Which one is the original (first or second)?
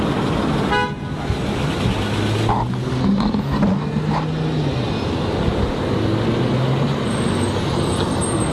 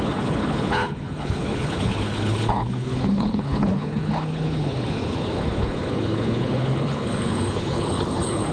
first